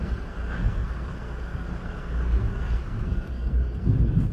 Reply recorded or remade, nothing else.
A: remade